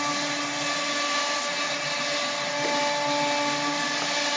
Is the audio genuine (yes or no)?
yes